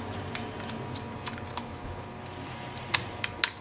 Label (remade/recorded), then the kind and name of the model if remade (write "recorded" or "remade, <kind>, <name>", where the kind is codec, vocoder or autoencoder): recorded